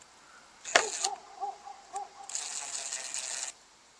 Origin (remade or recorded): recorded